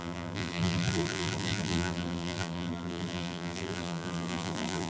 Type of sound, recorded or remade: remade